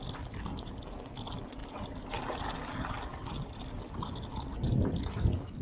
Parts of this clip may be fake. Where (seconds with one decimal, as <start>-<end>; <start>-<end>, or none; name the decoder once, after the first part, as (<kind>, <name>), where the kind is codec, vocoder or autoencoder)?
none